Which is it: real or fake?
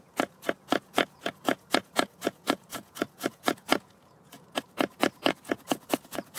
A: fake